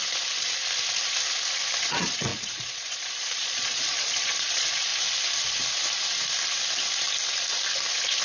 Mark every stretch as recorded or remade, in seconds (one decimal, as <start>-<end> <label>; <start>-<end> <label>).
0.0-1.8 recorded; 1.8-4.9 remade; 4.9-8.2 recorded